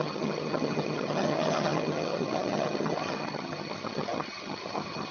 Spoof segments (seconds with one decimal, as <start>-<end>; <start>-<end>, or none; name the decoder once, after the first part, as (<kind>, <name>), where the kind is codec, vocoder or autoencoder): 0.0-5.1 (vocoder, HiFi-GAN)

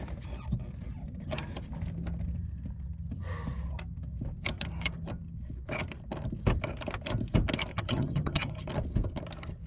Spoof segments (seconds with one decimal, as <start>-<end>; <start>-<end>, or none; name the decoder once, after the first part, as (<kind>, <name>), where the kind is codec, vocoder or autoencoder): 7.7-8.7 (vocoder, HiFi-GAN)

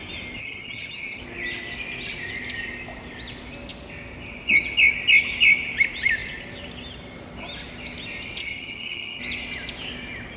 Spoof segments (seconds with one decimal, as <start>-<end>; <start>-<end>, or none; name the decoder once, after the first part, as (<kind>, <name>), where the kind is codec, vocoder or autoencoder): 0.4-1.2 (vocoder, HiFi-GAN); 8.4-9.2

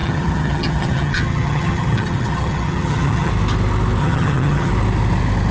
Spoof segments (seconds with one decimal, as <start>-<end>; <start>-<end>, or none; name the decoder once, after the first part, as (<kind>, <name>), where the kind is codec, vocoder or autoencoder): 0.0-3.3 (vocoder, HiFi-GAN); 4.0-4.7

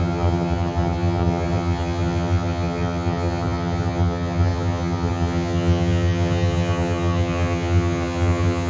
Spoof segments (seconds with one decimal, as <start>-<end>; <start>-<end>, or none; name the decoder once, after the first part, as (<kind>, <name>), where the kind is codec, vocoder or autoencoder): 0.0-8.7 (vocoder, HiFi-GAN)